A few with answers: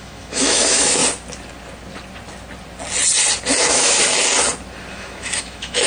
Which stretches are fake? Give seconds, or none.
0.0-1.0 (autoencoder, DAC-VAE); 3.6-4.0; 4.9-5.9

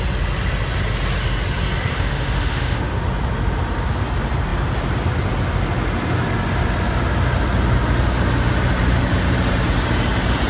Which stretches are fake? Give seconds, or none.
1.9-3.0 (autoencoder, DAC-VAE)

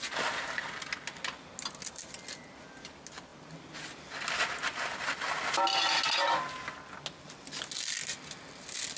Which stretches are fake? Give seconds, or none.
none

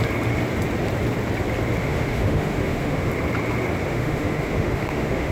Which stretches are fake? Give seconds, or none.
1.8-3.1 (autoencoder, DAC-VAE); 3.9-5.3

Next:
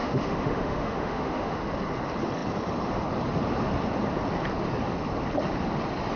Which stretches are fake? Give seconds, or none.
0.0-1.6 (autoencoder, DAC-VAE)

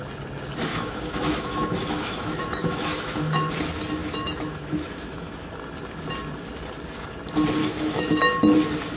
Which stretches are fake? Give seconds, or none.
0.7-3.5 (autoencoder, DAC-VAE); 4.0-5.5; 7.6-8.2

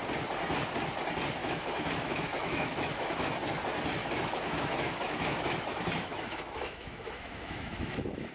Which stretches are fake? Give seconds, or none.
1.4-3.3 (autoencoder, DAC-VAE); 4.0-8.3